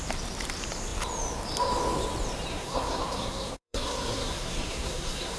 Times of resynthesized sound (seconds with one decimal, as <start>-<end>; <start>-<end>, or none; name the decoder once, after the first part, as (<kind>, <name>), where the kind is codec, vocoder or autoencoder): 2.5-5.4 (codec, SNAC)